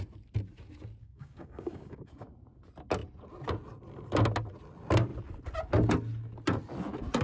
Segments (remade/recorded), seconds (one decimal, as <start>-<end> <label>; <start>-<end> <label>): 0.0-1.0 recorded; 1.0-2.1 remade; 2.1-7.2 recorded